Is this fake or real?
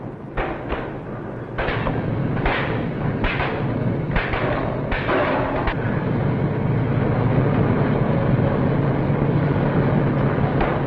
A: real